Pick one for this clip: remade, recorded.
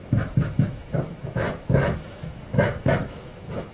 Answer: remade